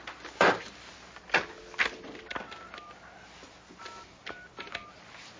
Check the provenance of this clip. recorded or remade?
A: recorded